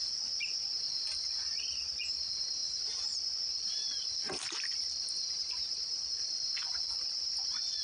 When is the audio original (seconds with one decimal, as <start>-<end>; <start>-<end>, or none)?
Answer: none